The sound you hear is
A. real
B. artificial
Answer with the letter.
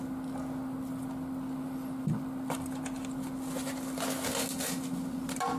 A